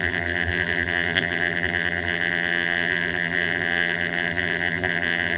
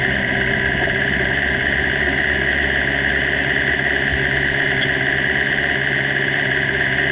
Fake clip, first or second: first